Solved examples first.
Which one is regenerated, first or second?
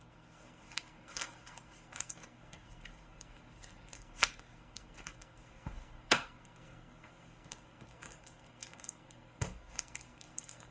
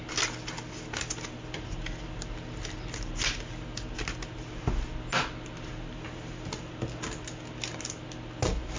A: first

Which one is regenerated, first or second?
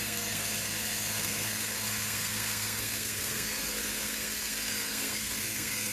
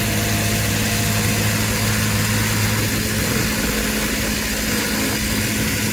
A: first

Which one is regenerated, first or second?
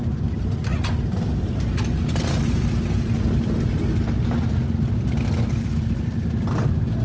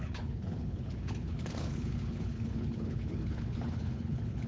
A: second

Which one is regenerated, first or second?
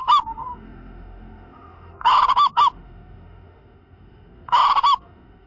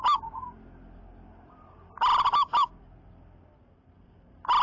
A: first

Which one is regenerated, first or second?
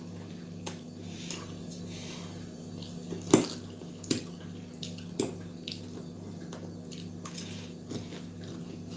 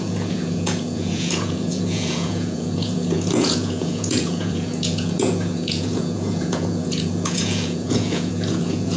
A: second